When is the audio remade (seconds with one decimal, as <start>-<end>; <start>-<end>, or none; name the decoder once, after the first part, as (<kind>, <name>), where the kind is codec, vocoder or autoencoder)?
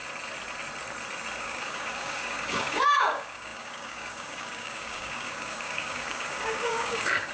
1.4-7.3 (codec, DAC)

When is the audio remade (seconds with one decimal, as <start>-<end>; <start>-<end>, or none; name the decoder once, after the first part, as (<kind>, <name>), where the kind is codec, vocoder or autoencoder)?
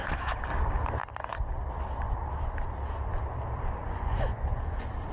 3.8-5.1 (vocoder, Vocos)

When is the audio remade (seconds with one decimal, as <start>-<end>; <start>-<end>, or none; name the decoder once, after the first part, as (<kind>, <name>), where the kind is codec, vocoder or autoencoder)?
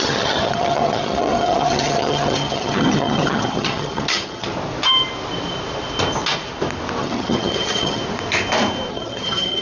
0.0-4.5 (vocoder, HiFi-GAN); 7.0-8.0; 8.9-9.6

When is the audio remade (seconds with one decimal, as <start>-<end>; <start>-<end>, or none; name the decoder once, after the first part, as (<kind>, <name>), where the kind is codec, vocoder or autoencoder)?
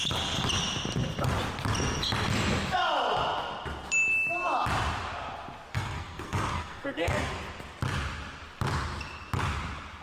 5.7-7.3 (codec, SNAC)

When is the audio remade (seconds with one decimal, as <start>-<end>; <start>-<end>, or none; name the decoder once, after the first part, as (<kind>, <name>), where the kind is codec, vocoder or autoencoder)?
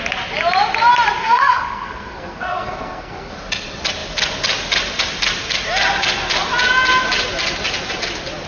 1.2-3.3 (codec, SNAC)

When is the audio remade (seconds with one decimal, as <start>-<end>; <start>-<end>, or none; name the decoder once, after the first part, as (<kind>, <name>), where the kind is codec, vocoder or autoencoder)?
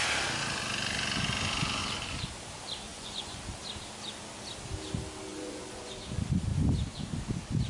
2.9-3.4 (vocoder, Vocos); 5.3-5.9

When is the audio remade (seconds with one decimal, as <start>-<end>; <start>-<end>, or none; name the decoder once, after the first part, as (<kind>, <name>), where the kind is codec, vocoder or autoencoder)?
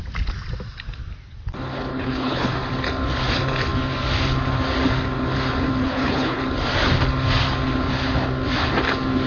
1.9-2.5 (codec, HILCodec); 5.8-6.4